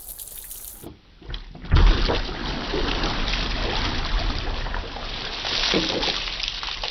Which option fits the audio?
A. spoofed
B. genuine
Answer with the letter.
B